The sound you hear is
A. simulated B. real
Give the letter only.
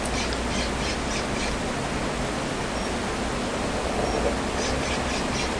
B